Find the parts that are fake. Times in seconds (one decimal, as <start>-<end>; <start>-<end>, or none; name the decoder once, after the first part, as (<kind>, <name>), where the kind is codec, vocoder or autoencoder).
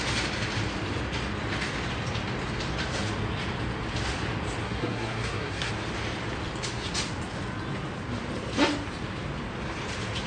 4.6-5.7 (codec, SNAC)